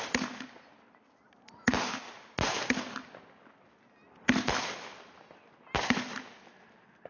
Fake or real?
real